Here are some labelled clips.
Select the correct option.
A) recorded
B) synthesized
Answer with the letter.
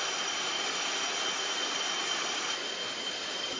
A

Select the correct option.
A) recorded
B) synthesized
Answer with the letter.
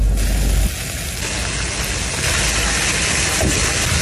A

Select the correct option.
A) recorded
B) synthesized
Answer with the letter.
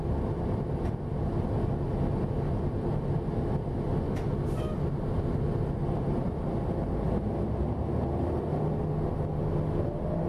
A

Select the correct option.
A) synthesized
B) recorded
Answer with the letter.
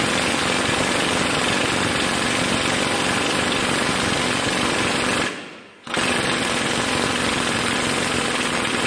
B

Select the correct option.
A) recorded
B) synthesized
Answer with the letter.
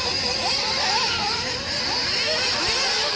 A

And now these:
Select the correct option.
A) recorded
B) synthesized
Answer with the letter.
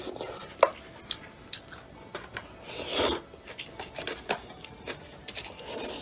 A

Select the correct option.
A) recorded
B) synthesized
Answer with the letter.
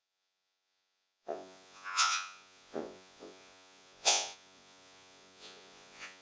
B